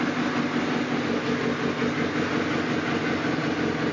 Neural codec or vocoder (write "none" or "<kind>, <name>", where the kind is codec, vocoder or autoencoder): none